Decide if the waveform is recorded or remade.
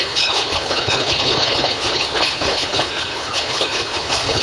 remade